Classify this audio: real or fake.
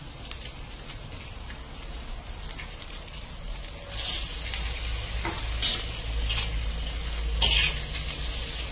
real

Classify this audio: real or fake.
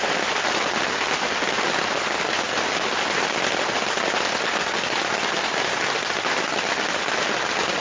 real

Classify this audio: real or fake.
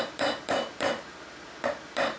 fake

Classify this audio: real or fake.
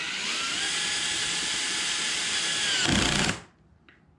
real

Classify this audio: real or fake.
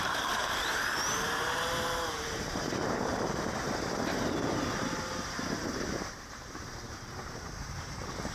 fake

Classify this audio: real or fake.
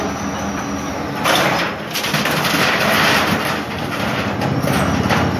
real